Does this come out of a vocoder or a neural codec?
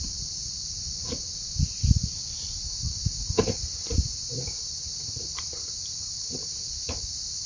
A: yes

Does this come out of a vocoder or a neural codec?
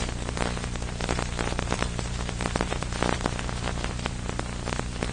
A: yes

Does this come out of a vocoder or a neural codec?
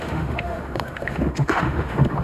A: yes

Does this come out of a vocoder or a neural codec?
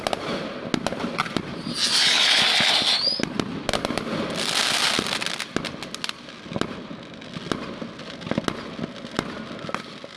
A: no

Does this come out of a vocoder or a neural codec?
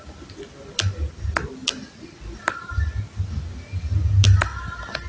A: no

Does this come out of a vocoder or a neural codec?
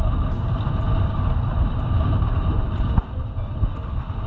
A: no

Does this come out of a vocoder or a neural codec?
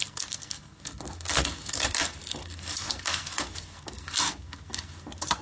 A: yes